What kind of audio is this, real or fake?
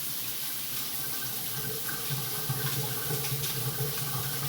fake